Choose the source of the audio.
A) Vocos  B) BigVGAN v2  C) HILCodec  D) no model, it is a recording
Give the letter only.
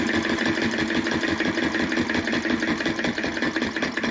D